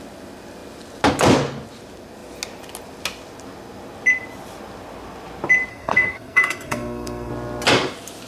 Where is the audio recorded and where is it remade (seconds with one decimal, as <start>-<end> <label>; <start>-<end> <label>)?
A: 0.0-5.7 recorded; 5.7-7.3 remade; 7.3-8.3 recorded